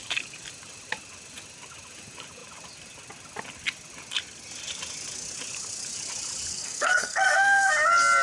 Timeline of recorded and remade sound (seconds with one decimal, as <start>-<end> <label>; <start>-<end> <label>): 0.0-6.5 recorded; 6.5-7.7 remade; 7.7-8.2 recorded